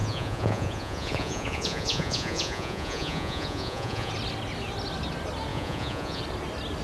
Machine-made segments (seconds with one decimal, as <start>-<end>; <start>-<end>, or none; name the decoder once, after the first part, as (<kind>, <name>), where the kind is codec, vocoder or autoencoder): 0.0-4.1 (vocoder, Vocos); 5.5-6.2